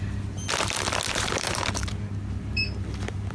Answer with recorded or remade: recorded